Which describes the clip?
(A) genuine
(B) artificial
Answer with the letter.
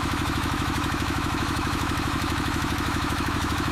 B